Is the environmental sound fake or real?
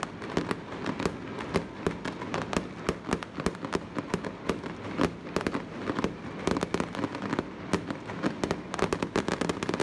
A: real